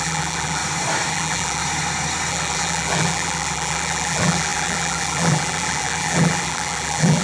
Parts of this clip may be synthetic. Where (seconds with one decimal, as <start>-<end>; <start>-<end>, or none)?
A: 0.0-0.6; 1.1-1.6; 2.3-7.2